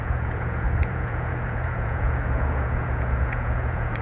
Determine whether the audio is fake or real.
fake